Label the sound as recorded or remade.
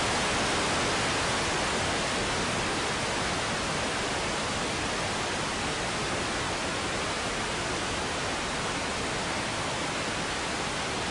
recorded